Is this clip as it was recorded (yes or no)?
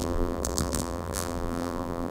no